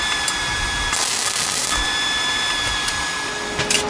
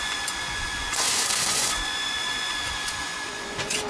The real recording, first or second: first